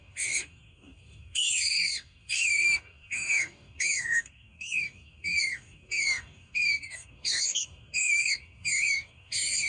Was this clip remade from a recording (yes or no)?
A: yes